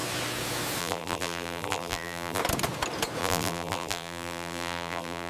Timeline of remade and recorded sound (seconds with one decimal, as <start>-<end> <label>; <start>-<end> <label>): 0.0-0.8 recorded; 0.8-2.4 remade; 2.4-3.2 recorded; 3.2-5.3 remade